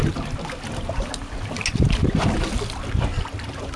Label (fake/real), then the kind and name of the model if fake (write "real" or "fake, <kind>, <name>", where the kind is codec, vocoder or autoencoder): real